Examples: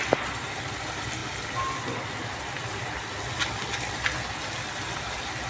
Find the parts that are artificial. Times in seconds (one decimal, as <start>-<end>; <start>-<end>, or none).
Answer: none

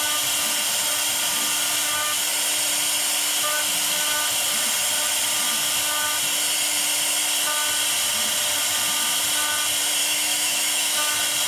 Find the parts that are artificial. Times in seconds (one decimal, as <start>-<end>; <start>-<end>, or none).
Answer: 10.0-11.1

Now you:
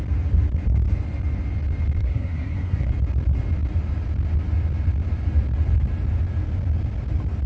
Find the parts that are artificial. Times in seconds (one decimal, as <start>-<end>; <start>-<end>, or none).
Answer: 2.0-2.9

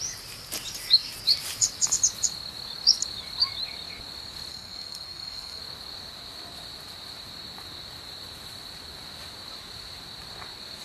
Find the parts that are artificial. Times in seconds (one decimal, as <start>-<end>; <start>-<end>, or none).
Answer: 4.5-5.6